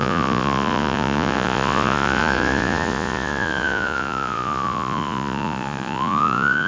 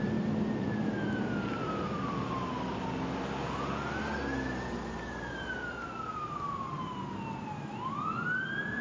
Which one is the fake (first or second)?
first